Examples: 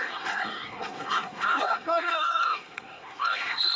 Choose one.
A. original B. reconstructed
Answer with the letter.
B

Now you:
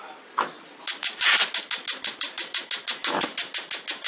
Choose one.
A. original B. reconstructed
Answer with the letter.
A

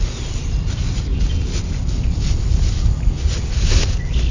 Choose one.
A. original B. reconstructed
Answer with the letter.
A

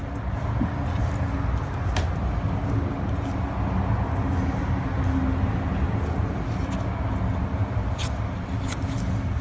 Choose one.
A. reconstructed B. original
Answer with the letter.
B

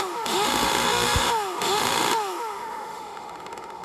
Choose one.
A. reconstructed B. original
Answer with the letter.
A